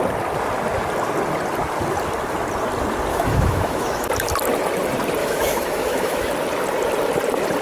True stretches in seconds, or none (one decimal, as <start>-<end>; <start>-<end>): 0.0-3.1; 4.1-5.2; 6.3-7.6